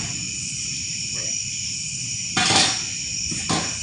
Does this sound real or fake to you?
real